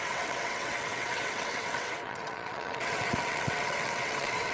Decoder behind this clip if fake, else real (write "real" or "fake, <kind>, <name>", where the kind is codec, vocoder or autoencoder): fake, vocoder, WaveNeXt